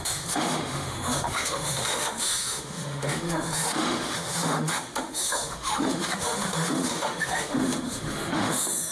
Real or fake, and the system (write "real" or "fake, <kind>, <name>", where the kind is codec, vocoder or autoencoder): fake, autoencoder, DAC-VAE